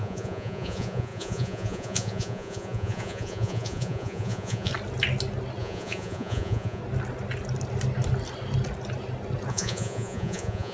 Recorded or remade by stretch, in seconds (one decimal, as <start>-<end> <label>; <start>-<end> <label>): 0.0-4.7 remade; 4.7-5.6 recorded; 5.6-6.8 remade; 6.8-9.5 recorded; 9.5-10.7 remade